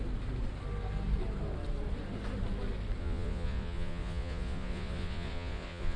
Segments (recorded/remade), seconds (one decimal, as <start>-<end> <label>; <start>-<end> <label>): 0.0-3.0 recorded; 3.0-6.0 remade